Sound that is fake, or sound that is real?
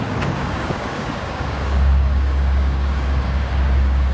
fake